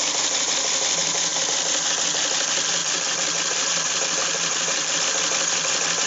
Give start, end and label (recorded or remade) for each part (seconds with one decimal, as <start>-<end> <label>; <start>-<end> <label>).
0.0-2.8 recorded; 2.8-5.0 remade; 5.0-6.1 recorded